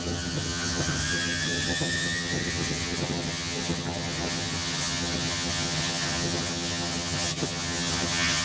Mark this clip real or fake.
fake